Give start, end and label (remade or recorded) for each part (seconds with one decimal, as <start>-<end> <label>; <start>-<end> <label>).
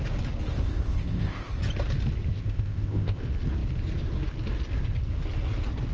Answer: 0.0-0.6 recorded; 0.6-1.5 remade; 1.5-2.3 recorded; 2.3-3.2 remade; 3.2-5.9 recorded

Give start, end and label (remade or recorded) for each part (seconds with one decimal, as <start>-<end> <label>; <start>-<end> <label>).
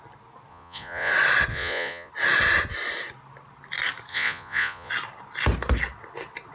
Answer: 0.0-0.5 recorded; 0.5-1.1 remade; 1.1-1.5 recorded; 1.5-2.1 remade; 2.1-4.1 recorded; 4.1-4.9 remade; 4.9-6.5 recorded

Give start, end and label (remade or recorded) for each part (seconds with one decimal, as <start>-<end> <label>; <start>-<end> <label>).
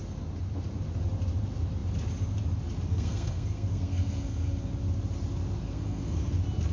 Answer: 0.0-2.9 recorded; 2.9-4.7 remade; 4.7-5.6 recorded; 5.6-6.3 remade; 6.3-6.7 recorded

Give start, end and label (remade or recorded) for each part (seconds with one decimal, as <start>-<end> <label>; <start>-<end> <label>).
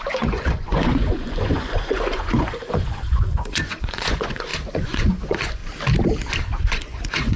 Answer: 0.0-5.6 remade; 5.6-6.6 recorded; 6.6-7.4 remade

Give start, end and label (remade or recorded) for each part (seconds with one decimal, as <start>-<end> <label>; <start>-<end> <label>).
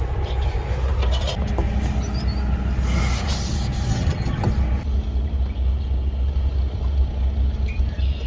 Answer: 0.0-3.9 recorded; 3.9-4.5 remade; 4.5-8.3 recorded